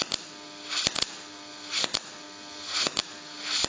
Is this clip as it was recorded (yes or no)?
yes